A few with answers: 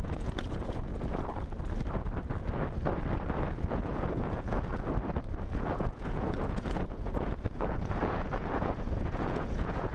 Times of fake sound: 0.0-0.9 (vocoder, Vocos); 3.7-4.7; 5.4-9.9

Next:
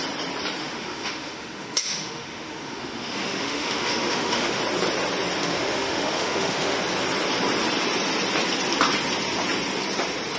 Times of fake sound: 0.6-4.6 (autoencoder, DAC-VAE); 5.4-6.8

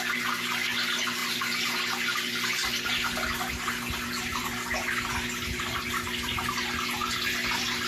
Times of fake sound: none